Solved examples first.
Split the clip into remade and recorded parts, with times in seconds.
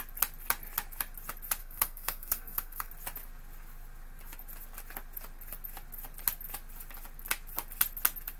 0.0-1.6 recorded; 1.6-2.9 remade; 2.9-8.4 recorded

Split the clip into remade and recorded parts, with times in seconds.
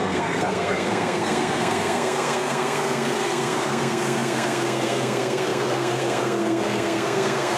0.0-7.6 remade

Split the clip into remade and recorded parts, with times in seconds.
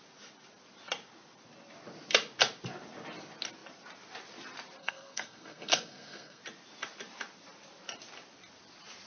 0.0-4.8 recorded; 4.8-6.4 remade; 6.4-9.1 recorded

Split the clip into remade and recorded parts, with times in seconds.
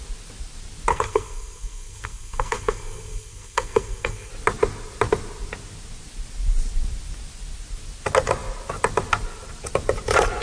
0.0-0.9 recorded; 0.9-4.3 remade; 4.3-10.4 recorded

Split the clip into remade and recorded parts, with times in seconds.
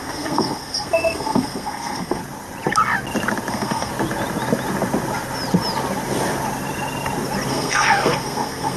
0.0-2.2 remade; 2.2-3.5 recorded; 3.5-3.9 remade; 3.9-7.5 recorded; 7.5-8.8 remade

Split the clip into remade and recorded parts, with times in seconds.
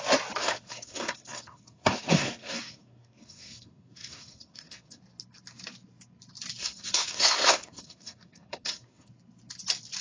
0.0-0.4 recorded; 0.4-5.0 remade; 5.0-6.6 recorded; 6.6-9.1 remade; 9.1-10.0 recorded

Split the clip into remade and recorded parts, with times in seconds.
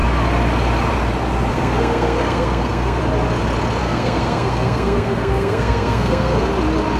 0.0-1.5 recorded; 1.5-3.0 remade; 3.0-3.8 recorded; 3.8-6.5 remade; 6.5-7.0 recorded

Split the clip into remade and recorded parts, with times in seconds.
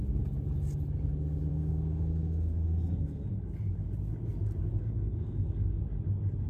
0.0-1.5 recorded; 1.5-3.3 remade; 3.3-4.8 recorded; 4.8-5.8 remade; 5.8-6.5 recorded